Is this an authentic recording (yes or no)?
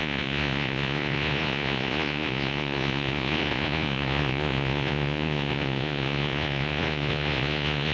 no